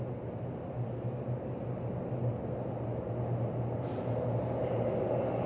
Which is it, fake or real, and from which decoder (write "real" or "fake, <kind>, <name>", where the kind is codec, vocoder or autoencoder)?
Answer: real